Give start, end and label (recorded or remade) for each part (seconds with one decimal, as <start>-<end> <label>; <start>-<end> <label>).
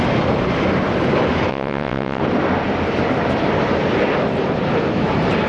0.0-1.5 recorded; 1.5-2.2 remade; 2.2-5.5 recorded